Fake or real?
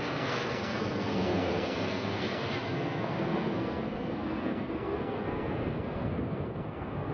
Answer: fake